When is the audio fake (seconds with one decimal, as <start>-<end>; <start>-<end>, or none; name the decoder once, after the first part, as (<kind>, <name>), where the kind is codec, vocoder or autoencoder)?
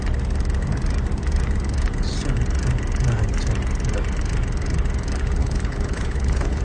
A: 5.4-6.6 (codec, HILCodec)